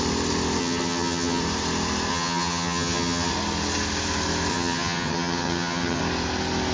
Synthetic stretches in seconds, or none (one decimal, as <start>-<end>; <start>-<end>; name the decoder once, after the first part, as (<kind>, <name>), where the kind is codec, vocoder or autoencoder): 0.6-1.4 (vocoder, HiFi-GAN); 2.1-3.3; 4.5-6.0